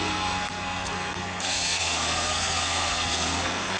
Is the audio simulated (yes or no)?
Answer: yes